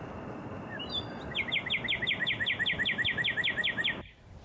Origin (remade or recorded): recorded